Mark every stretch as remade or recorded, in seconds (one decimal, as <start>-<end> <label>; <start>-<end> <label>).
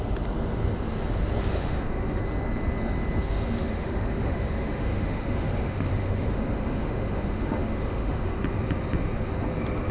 0.0-1.5 recorded; 1.5-2.2 remade; 2.2-3.6 recorded; 3.6-8.4 remade; 8.4-9.9 recorded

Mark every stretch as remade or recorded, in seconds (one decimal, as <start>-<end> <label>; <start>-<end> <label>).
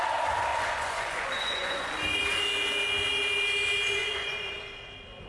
0.0-0.5 recorded; 0.5-1.9 remade; 1.9-4.0 recorded; 4.0-4.5 remade; 4.5-5.3 recorded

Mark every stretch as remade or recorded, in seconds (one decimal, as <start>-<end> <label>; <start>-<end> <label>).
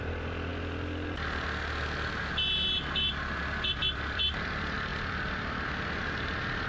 0.0-0.5 remade; 0.5-3.8 recorded; 3.8-6.7 remade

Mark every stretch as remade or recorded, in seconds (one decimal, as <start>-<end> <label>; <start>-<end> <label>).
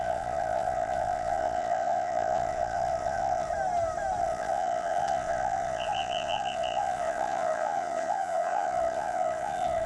0.0-3.5 remade; 3.5-4.2 recorded; 4.2-9.9 remade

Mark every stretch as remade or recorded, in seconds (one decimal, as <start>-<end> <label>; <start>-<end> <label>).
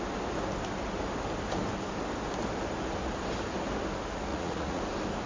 0.0-4.3 recorded; 4.3-4.8 remade; 4.8-5.3 recorded